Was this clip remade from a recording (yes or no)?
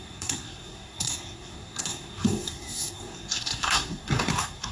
yes